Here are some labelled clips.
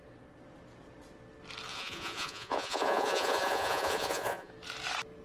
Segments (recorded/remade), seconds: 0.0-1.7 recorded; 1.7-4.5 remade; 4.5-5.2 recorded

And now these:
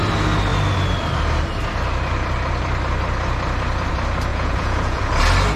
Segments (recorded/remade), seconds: 0.0-4.3 recorded; 4.3-5.0 remade; 5.0-5.6 recorded